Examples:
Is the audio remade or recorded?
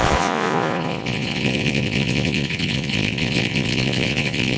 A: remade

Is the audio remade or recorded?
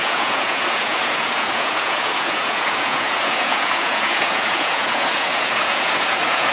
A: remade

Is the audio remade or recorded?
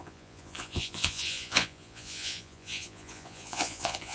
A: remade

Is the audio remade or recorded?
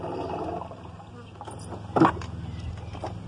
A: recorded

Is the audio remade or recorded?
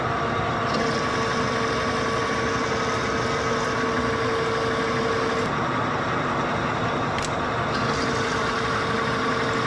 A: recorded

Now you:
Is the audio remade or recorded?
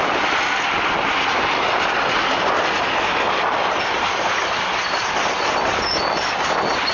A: recorded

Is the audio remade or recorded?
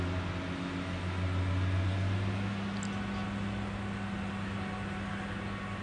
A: recorded